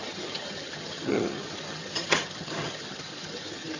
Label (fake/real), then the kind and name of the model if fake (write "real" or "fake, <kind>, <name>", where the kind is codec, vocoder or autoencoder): fake, vocoder, HiFi-GAN